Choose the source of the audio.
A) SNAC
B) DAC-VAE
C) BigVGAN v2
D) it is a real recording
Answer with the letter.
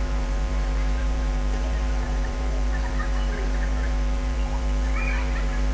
C